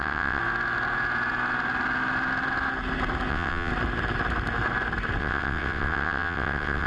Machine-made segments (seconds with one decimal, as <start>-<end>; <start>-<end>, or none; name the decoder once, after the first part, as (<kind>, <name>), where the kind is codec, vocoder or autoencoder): 0.0-0.4 (vocoder, WaveNeXt); 3.3-3.7; 5.2-6.9